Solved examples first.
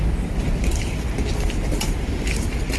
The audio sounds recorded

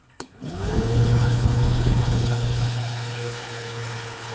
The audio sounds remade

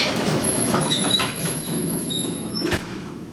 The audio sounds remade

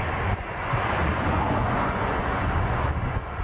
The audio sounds remade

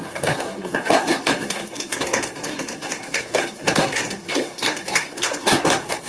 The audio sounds remade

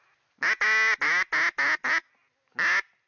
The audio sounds recorded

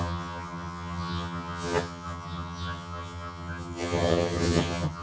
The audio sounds remade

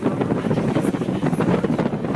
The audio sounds recorded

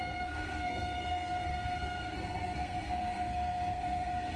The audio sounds remade